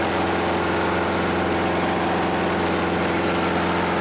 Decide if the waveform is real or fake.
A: real